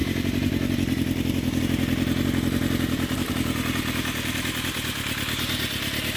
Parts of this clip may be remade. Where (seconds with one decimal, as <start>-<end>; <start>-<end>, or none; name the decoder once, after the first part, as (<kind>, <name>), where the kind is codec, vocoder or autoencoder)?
0.0-1.6 (vocoder, BigVGAN v2)